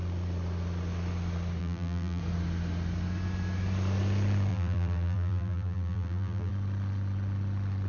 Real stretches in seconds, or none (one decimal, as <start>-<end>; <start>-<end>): 0.0-1.6; 2.2-4.5; 6.5-7.9